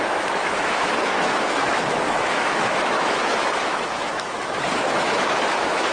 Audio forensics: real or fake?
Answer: fake